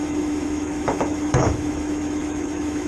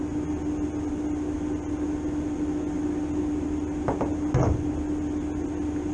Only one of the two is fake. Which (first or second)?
first